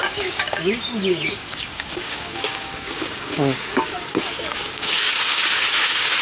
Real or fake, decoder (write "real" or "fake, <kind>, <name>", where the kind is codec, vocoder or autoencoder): fake, codec, DAC